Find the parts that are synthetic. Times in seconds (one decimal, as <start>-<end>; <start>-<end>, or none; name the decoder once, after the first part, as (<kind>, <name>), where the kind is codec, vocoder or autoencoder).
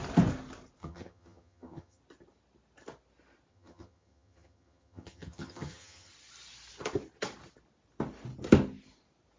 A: 0.8-2.0 (vocoder, HiFi-GAN); 3.5-6.1